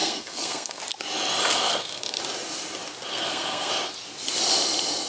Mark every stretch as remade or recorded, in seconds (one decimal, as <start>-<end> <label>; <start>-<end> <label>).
0.0-0.8 remade; 0.8-1.6 recorded; 1.6-2.2 remade; 2.2-3.1 recorded; 3.1-3.7 remade; 3.7-5.1 recorded